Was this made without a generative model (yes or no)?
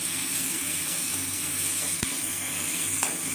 no